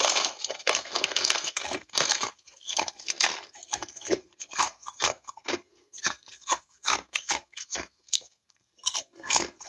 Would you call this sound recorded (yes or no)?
no